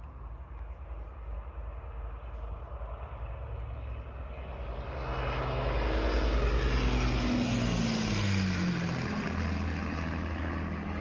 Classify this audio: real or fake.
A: real